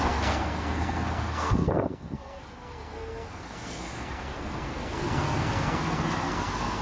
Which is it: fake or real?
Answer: fake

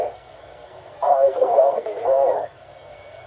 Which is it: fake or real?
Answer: fake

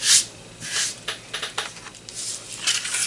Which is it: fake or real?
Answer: real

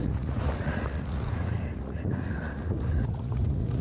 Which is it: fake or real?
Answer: fake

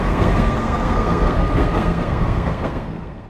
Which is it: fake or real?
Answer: fake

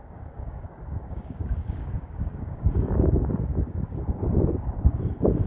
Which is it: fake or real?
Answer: fake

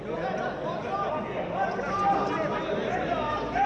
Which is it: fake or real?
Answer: real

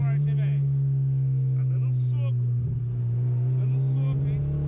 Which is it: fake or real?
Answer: real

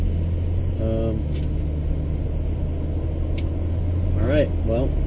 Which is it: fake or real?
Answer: real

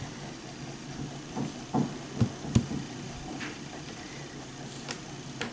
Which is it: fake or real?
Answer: real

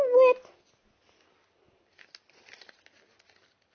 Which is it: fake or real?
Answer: real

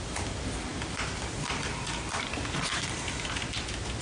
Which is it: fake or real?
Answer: real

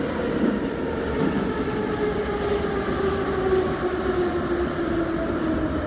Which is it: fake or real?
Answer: real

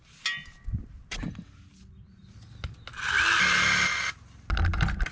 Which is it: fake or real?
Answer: real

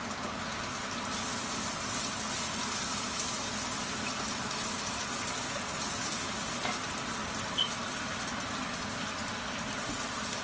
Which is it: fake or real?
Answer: real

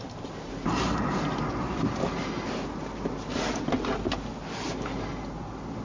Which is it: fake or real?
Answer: real